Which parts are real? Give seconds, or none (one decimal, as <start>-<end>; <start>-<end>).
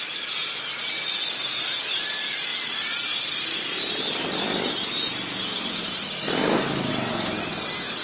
0.0-6.4; 6.9-8.0